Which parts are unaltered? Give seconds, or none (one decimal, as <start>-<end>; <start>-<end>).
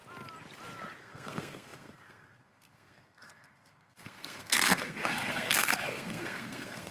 0.0-1.0